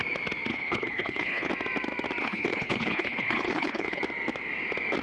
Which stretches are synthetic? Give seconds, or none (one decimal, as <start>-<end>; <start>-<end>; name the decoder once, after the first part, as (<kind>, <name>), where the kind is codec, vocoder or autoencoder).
0.5-1.5 (codec, HILCodec); 2.2-4.0